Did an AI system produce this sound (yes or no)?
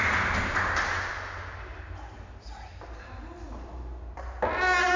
no